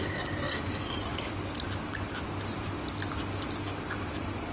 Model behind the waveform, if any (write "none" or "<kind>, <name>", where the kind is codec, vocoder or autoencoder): none